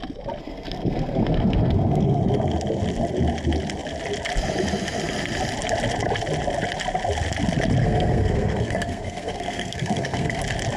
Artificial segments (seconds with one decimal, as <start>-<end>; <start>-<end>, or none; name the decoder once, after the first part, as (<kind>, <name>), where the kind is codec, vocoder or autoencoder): 0.4-2.2 (codec, SNAC); 7.8-10.4

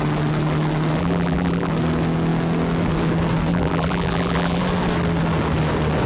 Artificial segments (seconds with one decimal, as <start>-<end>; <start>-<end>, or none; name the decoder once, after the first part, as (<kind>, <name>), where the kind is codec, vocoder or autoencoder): 1.0-1.7 (vocoder, BigVGAN v2); 3.5-4.6

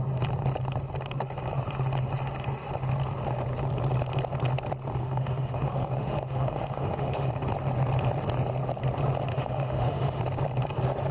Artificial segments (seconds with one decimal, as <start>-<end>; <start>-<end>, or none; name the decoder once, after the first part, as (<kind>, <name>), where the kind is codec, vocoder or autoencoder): 5.0-7.3 (autoencoder, DAC-VAE); 9.3-10.2

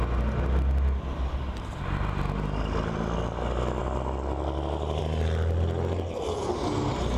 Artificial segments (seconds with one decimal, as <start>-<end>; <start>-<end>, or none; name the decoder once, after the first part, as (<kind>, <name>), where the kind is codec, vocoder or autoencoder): none

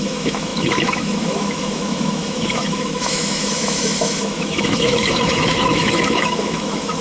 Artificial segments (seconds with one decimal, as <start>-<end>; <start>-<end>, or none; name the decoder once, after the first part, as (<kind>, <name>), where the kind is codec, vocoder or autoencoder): 0.0-7.0 (autoencoder, DAC-VAE)

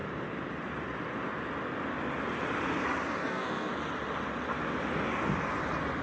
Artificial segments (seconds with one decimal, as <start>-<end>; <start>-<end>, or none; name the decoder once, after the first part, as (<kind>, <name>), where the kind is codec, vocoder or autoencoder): 3.2-3.7 (codec, SNAC)